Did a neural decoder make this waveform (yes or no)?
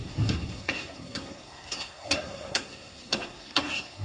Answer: yes